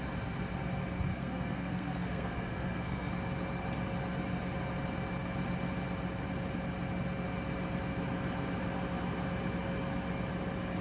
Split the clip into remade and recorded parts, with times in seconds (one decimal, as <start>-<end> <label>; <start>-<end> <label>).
0.0-1.1 recorded; 1.1-3.1 remade; 3.1-10.8 recorded